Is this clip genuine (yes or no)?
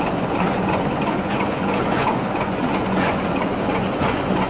no